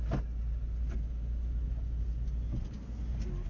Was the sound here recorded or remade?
recorded